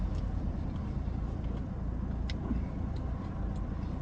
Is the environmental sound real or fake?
real